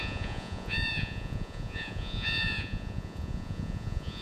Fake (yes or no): yes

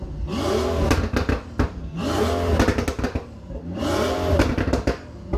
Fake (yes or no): no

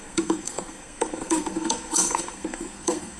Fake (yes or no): yes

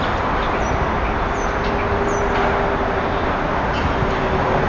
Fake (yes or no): no